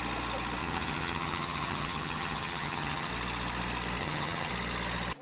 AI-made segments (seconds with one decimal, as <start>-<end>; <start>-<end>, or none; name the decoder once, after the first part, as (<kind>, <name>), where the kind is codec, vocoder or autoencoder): 0.6-3.1 (vocoder, HiFi-GAN); 4.0-4.5